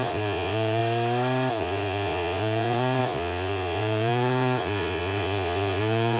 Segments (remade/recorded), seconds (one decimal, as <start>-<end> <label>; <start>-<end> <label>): 0.0-0.8 remade; 0.8-1.5 recorded; 1.5-6.2 remade